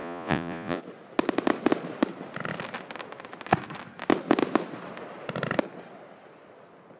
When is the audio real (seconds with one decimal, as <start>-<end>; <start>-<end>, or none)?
0.8-7.0